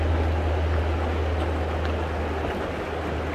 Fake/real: real